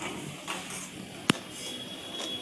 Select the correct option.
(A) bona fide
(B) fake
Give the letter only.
A